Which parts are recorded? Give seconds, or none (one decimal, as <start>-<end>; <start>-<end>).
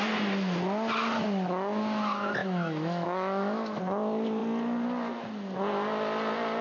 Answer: 0.0-2.4; 3.8-6.6